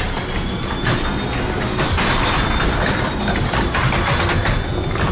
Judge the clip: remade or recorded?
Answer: recorded